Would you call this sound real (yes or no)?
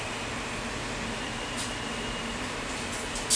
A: yes